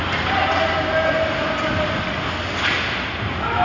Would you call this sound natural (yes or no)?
yes